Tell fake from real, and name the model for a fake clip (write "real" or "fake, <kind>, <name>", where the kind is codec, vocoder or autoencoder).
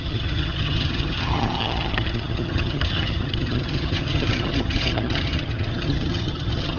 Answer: fake, vocoder, HiFi-GAN